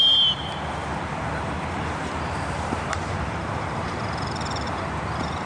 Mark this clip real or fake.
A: fake